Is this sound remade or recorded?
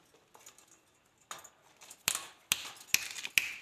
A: recorded